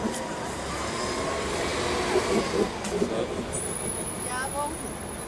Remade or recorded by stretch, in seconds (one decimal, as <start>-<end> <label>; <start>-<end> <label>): 0.0-5.3 recorded

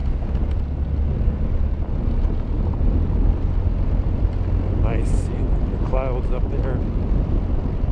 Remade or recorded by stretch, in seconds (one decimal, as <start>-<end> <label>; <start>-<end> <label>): 0.0-7.9 recorded

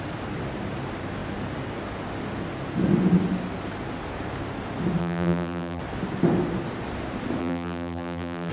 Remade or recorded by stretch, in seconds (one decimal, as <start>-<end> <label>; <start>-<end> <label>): 0.0-5.0 recorded; 5.0-5.8 remade; 5.8-7.4 recorded; 7.4-8.5 remade

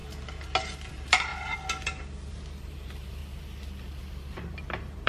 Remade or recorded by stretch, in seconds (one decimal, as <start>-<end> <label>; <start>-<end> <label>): 0.0-0.9 recorded; 0.9-1.3 remade; 1.3-2.3 recorded; 2.3-3.2 remade; 3.2-4.0 recorded; 4.0-5.1 remade

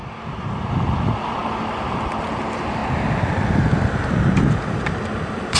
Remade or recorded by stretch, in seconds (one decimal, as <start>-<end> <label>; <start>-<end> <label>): 0.0-0.7 recorded; 0.7-2.8 remade; 2.8-5.1 recorded; 5.1-5.6 remade

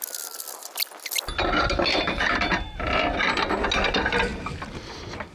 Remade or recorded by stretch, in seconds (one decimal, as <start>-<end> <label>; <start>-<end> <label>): 0.0-1.9 recorded; 1.9-3.0 remade; 3.0-5.3 recorded